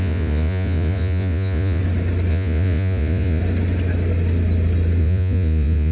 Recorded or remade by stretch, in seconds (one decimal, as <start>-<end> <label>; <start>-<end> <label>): 0.0-1.8 remade; 1.8-2.3 recorded; 2.3-3.4 remade; 3.4-5.0 recorded; 5.0-5.9 remade